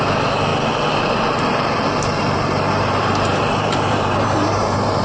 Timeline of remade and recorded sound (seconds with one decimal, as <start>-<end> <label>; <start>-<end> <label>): 0.0-0.5 remade; 0.5-2.2 recorded; 2.2-5.0 remade